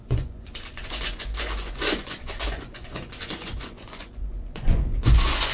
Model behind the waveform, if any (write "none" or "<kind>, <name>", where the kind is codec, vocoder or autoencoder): vocoder, Vocos